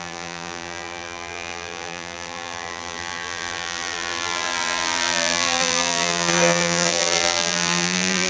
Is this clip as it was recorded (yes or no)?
no